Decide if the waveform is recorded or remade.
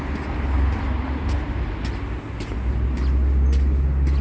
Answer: recorded